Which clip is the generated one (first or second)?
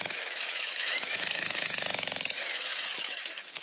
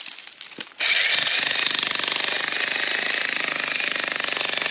first